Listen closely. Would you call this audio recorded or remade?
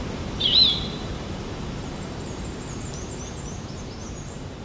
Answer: remade